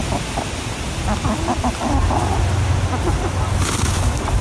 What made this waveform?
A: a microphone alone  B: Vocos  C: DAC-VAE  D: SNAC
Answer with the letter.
A